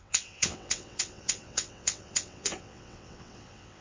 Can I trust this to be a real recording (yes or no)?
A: no